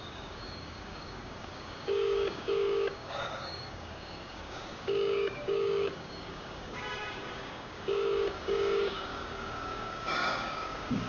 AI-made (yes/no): yes